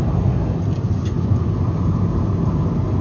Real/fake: real